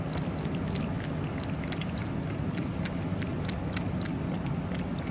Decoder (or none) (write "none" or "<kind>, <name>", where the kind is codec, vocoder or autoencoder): none